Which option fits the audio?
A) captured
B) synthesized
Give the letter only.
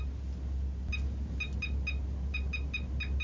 A